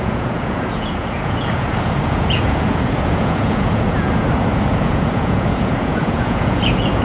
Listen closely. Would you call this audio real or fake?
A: fake